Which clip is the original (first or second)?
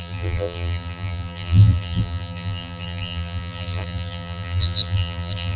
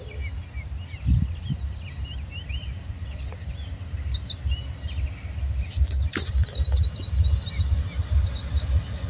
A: second